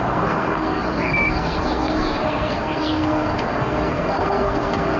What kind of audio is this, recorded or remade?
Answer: remade